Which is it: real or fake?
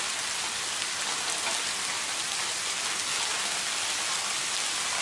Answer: real